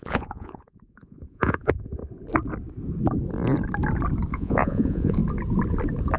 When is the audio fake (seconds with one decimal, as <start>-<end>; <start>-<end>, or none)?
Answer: 0.0-2.0; 4.3-5.2